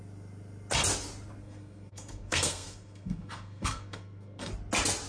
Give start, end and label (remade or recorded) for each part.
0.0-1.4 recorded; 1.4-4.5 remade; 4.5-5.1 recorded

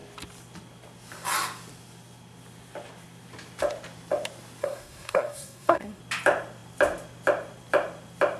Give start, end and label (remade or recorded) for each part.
0.0-4.6 recorded; 4.6-6.0 remade; 6.0-8.4 recorded

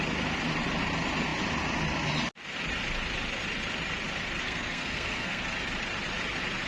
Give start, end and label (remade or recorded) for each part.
0.0-4.4 recorded; 4.4-5.4 remade; 5.4-6.7 recorded

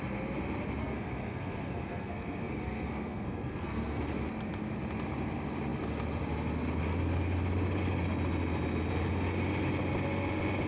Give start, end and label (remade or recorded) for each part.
0.0-0.8 recorded; 0.8-4.0 remade; 4.0-10.7 recorded

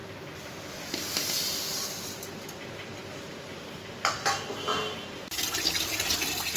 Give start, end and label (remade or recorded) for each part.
0.0-6.6 recorded

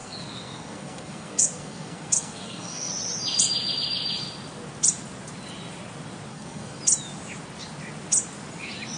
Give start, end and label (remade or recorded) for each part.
0.0-2.9 remade; 2.9-6.3 recorded; 6.3-6.8 remade; 6.8-9.0 recorded

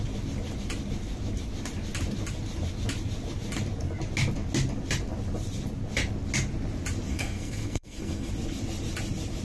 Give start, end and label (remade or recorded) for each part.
0.0-7.1 recorded; 7.1-8.3 remade; 8.3-9.4 recorded